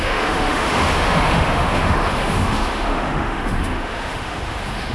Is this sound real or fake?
fake